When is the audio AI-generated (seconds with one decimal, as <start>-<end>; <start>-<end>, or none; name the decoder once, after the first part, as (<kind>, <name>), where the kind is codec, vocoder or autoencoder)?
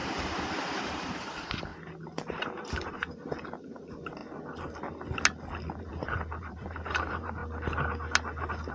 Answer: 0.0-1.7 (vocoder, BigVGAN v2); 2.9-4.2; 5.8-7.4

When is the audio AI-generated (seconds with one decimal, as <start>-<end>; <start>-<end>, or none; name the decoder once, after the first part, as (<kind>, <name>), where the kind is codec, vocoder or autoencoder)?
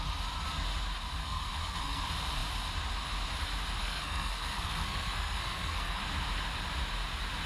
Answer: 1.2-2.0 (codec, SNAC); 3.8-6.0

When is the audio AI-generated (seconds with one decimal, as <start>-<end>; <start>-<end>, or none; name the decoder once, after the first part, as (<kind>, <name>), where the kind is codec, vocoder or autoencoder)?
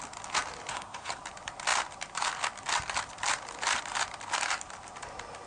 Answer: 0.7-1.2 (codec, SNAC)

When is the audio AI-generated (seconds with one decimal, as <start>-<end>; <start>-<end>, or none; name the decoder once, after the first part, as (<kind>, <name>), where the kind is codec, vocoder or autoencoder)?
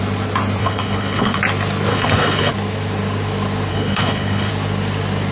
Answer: 0.6-1.4 (codec, HILCodec); 1.9-2.5; 3.7-4.5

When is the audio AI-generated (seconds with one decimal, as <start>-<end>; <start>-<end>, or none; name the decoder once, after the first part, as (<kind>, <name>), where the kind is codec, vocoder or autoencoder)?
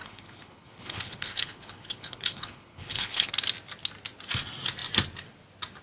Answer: 0.0-3.3 (codec, HILCodec)